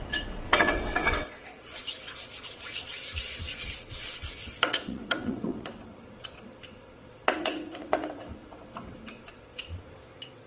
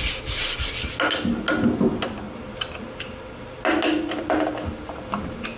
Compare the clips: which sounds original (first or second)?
second